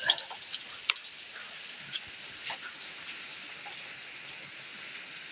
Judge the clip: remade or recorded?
recorded